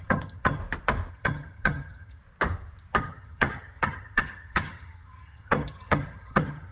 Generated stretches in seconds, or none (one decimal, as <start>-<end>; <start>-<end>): 0.0-0.6; 1.1-2.2; 3.0-6.7